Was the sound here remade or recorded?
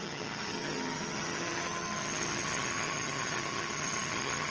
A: remade